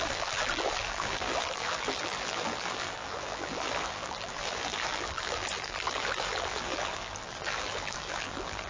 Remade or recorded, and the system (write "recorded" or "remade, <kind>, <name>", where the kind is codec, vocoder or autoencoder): remade, vocoder, BigVGAN v2